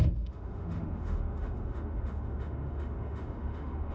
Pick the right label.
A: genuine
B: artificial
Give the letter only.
B